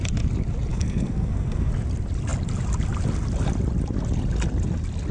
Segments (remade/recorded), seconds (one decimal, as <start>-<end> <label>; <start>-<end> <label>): 0.0-0.7 recorded; 0.7-1.7 remade; 1.7-5.1 recorded